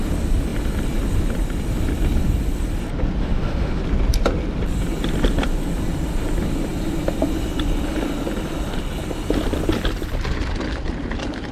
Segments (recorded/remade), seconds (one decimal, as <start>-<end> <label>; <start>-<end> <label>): 0.0-3.2 recorded; 3.2-3.8 remade; 3.8-11.5 recorded